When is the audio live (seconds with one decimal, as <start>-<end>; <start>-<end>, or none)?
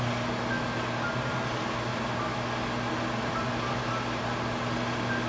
0.0-5.3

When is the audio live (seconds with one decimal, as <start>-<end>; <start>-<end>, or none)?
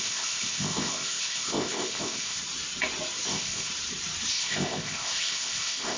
2.4-3.3; 3.7-4.3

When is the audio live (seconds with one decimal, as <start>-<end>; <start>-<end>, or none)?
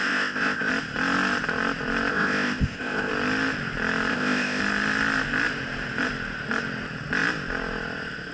0.7-2.1; 3.1-4.1; 4.6-8.3